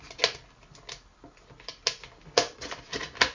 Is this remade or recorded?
recorded